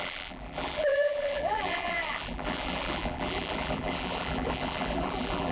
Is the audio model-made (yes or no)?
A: yes